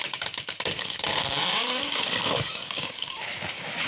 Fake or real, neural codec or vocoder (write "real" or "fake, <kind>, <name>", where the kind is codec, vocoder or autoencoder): fake, codec, DAC